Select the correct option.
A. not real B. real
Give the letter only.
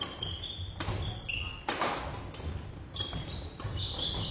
B